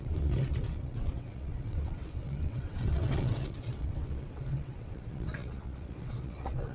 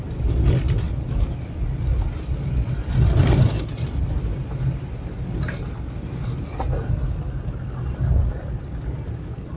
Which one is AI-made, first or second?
first